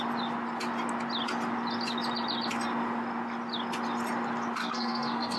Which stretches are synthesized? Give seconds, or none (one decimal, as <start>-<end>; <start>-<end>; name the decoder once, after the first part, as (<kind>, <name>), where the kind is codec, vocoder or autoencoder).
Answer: 4.6-5.4 (codec, SNAC)

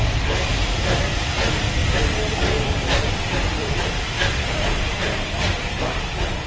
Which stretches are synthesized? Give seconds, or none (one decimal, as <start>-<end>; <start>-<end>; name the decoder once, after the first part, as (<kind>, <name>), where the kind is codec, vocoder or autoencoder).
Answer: 1.8-3.1 (vocoder, BigVGAN v2); 3.6-5.0; 5.5-6.5

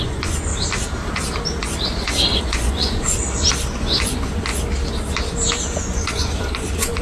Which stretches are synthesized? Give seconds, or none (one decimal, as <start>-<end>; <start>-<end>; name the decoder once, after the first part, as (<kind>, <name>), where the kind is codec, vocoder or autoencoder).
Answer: 0.0-0.5 (vocoder, Vocos); 2.4-3.2; 3.7-4.5; 5.6-7.0

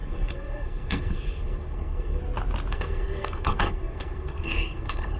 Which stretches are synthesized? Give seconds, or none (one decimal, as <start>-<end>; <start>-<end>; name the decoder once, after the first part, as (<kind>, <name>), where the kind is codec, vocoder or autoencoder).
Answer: 0.0-2.2 (codec, SNAC); 2.7-5.2

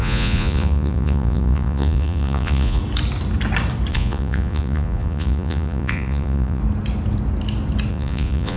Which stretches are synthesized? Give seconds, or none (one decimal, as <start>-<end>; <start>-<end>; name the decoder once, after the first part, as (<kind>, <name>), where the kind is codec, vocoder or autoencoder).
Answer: 0.0-2.8 (vocoder, Vocos); 3.9-6.6; 7.9-8.6

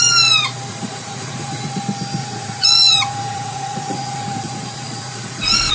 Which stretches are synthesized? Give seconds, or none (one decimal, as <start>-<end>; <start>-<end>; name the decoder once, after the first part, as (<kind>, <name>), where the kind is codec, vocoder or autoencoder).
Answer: 0.7-1.8 (vocoder, Vocos); 2.2-5.7

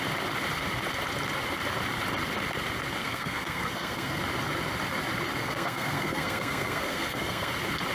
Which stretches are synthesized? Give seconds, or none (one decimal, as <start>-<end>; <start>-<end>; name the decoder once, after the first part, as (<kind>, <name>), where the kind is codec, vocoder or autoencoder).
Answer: 3.0-4.2 (codec, SNAC); 5.4-7.5

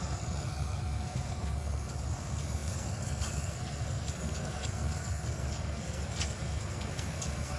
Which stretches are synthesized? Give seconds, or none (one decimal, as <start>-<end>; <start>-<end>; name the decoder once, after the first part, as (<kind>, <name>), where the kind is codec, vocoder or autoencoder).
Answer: 0.0-7.6 (codec, SNAC)